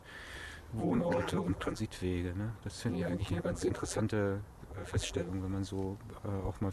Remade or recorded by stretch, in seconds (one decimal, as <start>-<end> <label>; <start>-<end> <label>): 0.0-0.8 recorded; 0.8-1.8 remade; 1.8-2.9 recorded; 2.9-4.0 remade; 4.0-4.7 recorded; 4.7-5.3 remade; 5.3-6.7 recorded